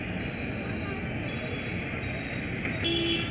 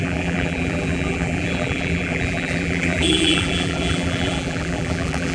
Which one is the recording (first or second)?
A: first